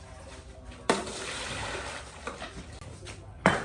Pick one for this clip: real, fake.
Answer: real